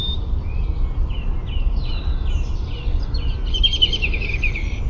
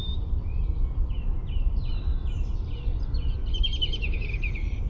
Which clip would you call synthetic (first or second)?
second